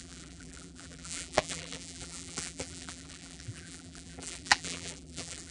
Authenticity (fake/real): fake